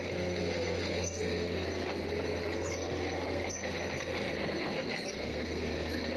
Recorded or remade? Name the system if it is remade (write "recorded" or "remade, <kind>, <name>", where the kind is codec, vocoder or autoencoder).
remade, codec, SNAC